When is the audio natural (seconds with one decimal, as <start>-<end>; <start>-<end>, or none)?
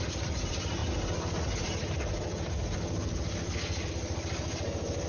0.0-5.1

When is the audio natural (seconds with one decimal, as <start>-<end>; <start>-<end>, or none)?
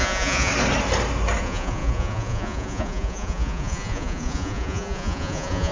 0.5-1.4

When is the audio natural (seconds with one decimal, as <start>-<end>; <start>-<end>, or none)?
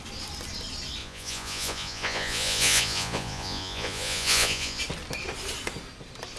0.0-1.0; 4.8-6.4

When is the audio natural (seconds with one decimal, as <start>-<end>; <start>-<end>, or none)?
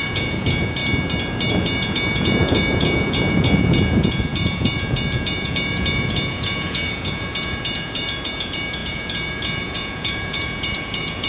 0.8-1.5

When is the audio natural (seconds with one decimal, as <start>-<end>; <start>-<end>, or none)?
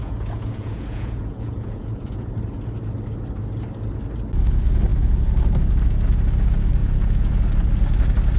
2.3-6.8; 7.3-8.4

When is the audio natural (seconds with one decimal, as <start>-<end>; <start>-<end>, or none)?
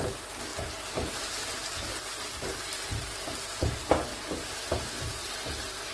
0.0-5.9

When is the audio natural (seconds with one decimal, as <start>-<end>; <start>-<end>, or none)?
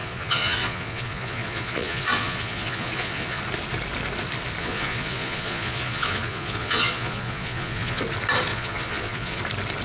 3.4-4.6; 8.0-8.5; 9.4-9.8